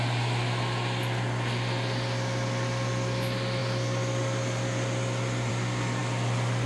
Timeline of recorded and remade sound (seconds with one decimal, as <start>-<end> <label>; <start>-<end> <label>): 0.0-6.7 recorded